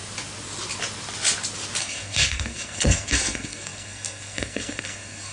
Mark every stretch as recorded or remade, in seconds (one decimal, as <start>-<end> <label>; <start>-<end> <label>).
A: 0.0-1.8 recorded; 1.8-5.3 remade